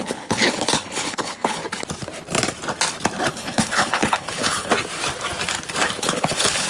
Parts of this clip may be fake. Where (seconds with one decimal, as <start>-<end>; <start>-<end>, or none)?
0.0-1.6; 3.3-4.7; 6.0-6.7